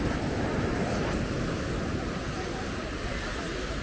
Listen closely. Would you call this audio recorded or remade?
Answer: recorded